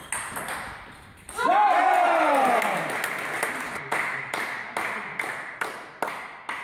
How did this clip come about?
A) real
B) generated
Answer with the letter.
A